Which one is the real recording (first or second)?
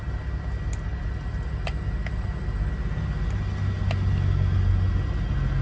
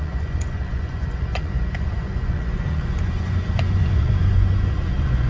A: first